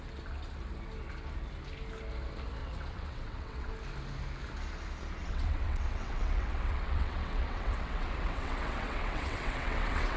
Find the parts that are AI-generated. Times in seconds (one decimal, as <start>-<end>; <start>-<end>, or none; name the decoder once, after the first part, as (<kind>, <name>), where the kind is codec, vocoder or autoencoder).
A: 2.6-3.7 (vocoder, WaveNeXt); 5.2-10.2